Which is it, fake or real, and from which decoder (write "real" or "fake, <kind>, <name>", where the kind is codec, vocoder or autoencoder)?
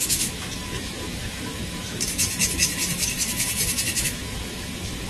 fake, autoencoder, DAC-VAE